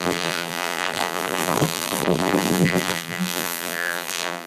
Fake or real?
fake